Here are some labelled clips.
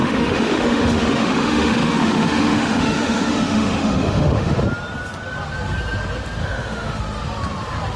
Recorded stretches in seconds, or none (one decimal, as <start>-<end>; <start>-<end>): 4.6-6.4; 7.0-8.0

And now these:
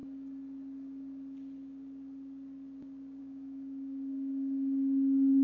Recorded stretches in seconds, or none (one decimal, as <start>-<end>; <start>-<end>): 0.0-3.2

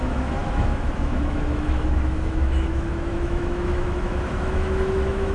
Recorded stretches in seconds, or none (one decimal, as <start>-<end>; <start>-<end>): none

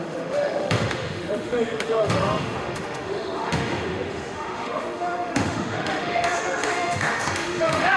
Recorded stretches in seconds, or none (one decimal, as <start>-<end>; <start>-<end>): none

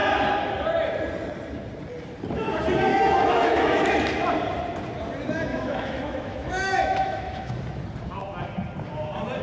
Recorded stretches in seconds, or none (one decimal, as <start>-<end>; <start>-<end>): 0.0-2.9; 3.8-5.5; 7.5-9.4

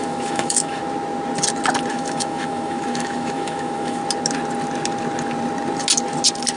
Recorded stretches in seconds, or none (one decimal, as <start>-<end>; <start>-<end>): 0.8-1.9; 4.0-6.6